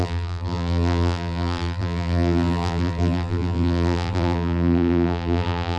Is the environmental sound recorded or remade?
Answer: remade